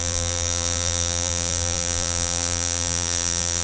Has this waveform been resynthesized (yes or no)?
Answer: yes